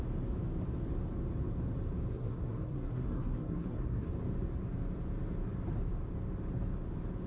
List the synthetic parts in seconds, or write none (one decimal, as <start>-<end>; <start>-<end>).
2.1-4.1